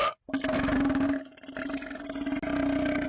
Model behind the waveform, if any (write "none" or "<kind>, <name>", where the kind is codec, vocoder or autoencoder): none